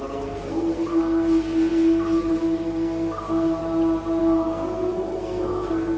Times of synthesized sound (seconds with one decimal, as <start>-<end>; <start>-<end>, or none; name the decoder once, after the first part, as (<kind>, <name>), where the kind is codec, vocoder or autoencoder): 0.0-3.6 (codec, SNAC); 4.2-6.0